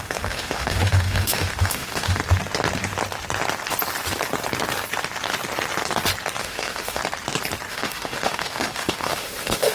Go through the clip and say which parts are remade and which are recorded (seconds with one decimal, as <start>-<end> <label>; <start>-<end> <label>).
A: 0.0-2.2 remade; 2.2-6.4 recorded; 6.4-7.0 remade; 7.0-7.7 recorded; 7.7-9.7 remade

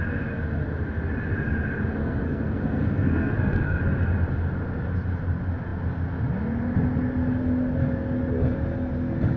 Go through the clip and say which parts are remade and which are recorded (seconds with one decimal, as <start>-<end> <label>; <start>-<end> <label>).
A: 0.0-2.0 recorded; 2.0-3.8 remade; 3.8-9.4 recorded

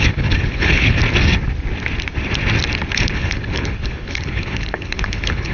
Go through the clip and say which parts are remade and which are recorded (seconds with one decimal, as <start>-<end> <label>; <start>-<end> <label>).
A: 0.0-1.0 remade; 1.0-2.9 recorded; 2.9-5.5 remade